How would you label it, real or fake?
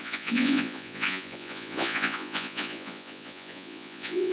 fake